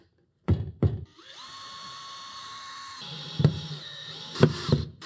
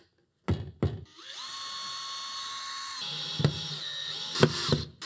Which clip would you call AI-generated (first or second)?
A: first